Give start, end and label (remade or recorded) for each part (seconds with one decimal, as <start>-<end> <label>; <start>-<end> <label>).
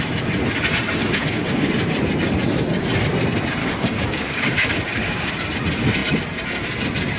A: 0.0-1.0 recorded; 1.0-1.7 remade; 1.7-3.6 recorded; 3.6-5.3 remade; 5.3-7.2 recorded